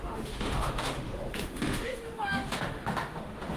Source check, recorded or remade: remade